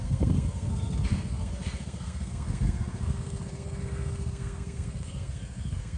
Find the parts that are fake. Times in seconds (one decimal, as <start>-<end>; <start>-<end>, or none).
0.0-6.0